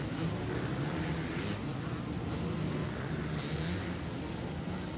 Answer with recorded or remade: recorded